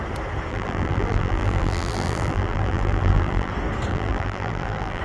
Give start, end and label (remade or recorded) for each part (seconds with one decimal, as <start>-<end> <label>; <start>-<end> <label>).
0.0-0.5 recorded; 0.5-3.5 remade; 3.5-3.9 recorded; 3.9-5.0 remade